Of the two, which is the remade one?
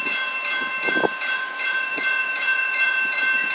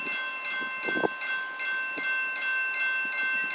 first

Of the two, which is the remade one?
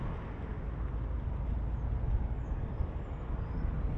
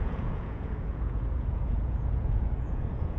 second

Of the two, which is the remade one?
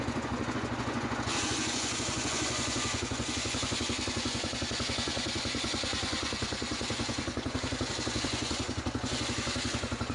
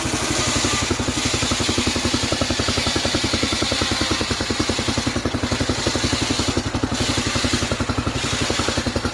first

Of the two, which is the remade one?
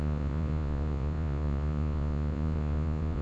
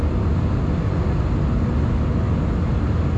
first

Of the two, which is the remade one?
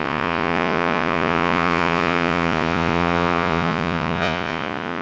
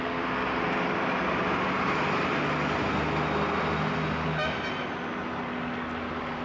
first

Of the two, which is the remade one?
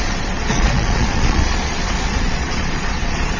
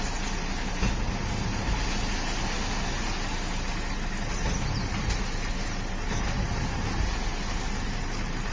first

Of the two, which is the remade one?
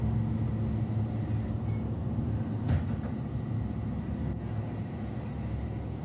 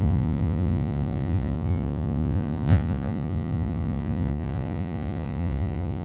second